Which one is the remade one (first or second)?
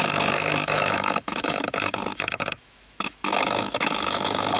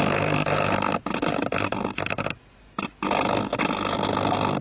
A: first